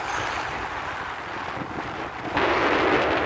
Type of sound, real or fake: real